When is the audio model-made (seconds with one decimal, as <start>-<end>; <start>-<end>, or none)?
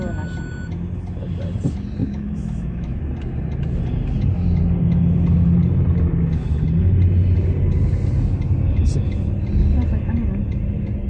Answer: 2.0-3.0